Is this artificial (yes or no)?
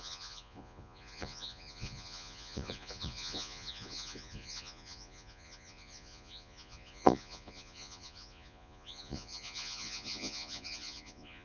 yes